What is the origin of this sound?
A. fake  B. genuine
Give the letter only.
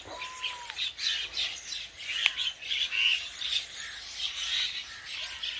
B